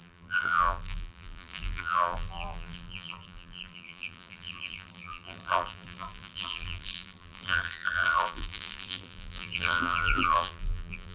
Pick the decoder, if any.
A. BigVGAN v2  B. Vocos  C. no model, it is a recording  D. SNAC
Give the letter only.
A